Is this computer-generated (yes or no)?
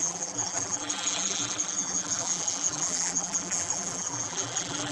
yes